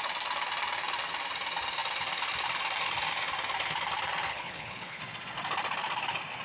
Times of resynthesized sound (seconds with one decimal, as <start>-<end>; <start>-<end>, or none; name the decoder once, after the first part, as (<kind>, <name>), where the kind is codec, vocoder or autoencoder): 4.3-5.0 (codec, HILCodec)